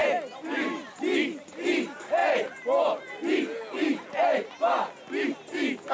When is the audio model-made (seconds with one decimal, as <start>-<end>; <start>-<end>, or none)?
none